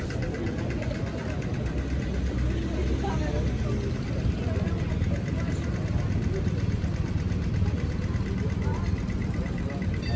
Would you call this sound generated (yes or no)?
no